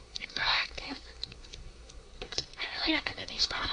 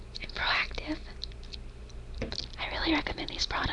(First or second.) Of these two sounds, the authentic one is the second